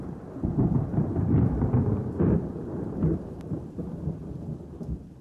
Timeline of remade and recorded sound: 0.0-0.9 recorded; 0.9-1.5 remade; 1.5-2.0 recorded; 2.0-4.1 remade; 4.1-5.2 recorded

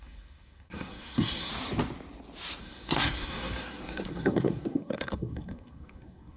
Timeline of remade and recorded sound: 0.0-1.5 remade; 1.5-2.6 recorded; 2.6-6.4 remade

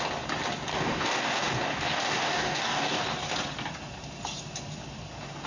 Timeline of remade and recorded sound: 0.0-0.7 recorded; 0.7-3.0 remade; 3.0-5.5 recorded

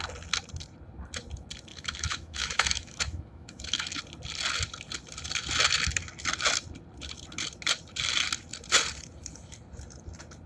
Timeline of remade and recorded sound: 0.0-1.7 recorded; 1.7-4.0 remade; 4.0-10.5 recorded

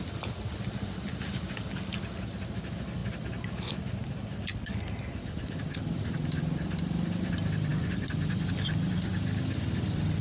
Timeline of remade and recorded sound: 0.0-3.0 recorded; 3.0-3.7 remade; 3.7-4.5 recorded; 4.5-7.3 remade; 7.3-7.7 recorded; 7.7-9.1 remade; 9.1-10.2 recorded

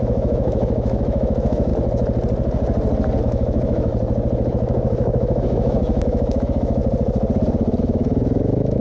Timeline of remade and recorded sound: 0.0-1.7 remade; 1.7-3.2 recorded; 3.2-3.9 remade; 3.9-4.5 recorded; 4.5-6.8 remade; 6.8-7.8 recorded; 7.8-8.8 remade

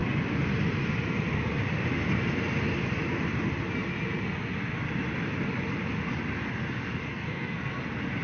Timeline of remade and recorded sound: 0.0-7.1 recorded; 7.1-7.7 remade; 7.7-8.2 recorded

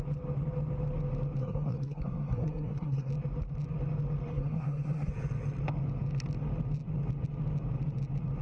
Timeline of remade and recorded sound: 0.0-1.4 recorded; 1.4-3.1 remade; 3.1-4.3 recorded; 4.3-5.1 remade; 5.1-8.4 recorded